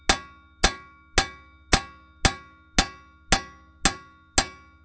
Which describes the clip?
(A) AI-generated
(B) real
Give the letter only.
B